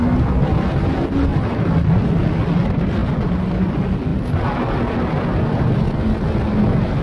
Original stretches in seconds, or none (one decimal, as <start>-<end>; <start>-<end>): 0.0-1.3; 2.1-3.0; 3.6-7.0